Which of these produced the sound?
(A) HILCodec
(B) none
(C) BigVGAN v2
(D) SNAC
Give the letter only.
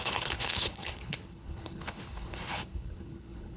A